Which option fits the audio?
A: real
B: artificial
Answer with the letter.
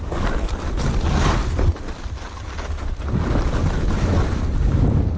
A